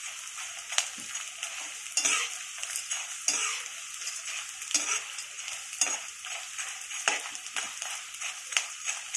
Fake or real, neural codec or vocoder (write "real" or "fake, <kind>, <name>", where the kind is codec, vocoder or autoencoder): real